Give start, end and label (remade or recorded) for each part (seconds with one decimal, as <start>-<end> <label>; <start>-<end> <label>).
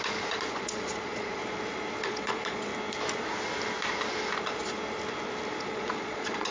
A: 0.0-1.4 remade; 1.4-2.0 recorded; 2.0-2.7 remade; 2.7-5.6 recorded; 5.6-6.5 remade